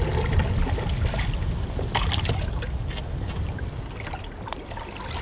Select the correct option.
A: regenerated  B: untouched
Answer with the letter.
B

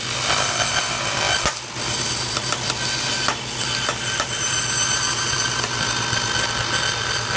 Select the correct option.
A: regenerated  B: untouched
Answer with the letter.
B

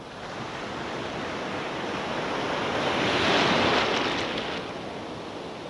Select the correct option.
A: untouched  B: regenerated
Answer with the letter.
A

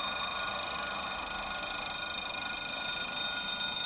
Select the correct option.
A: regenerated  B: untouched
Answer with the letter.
B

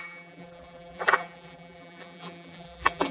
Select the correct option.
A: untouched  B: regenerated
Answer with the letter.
B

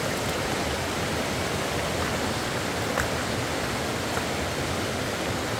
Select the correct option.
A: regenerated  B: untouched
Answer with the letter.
B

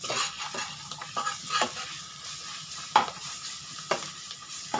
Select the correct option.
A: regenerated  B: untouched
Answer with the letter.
B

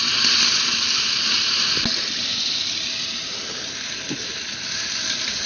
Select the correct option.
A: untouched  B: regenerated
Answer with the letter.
A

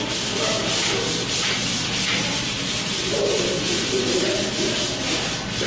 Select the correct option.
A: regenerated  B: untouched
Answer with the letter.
A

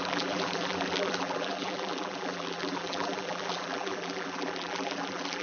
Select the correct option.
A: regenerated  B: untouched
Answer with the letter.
A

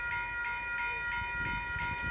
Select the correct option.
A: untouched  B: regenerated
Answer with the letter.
A